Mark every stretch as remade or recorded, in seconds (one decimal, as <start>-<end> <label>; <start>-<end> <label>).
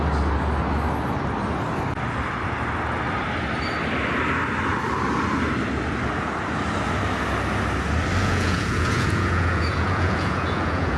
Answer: 0.0-8.2 recorded; 8.2-11.0 remade